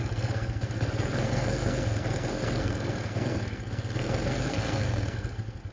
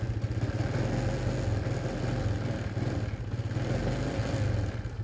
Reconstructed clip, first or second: first